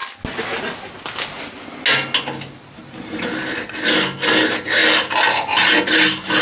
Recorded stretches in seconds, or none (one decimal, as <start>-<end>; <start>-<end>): 0.0-6.4